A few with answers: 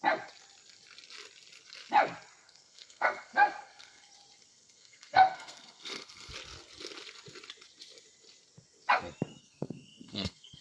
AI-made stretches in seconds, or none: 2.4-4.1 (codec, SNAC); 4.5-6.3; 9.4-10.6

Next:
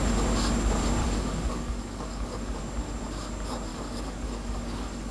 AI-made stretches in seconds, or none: 1.0-2.6 (codec, DAC); 3.7-5.1

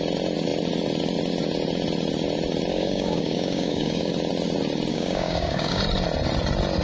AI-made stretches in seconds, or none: 2.7-4.1 (codec, DAC); 4.9-5.8

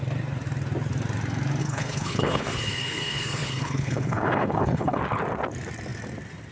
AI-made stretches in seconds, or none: 1.6-5.0 (codec, HILCodec)

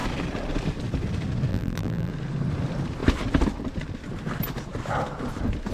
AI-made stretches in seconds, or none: 1.5-2.1 (vocoder, BigVGAN v2)

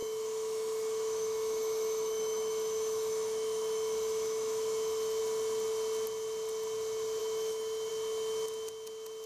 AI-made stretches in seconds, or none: 0.0-5.2 (autoencoder, DAC-VAE); 7.2-7.9

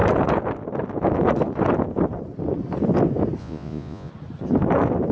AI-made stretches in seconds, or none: 3.4-4.1 (vocoder, Vocos)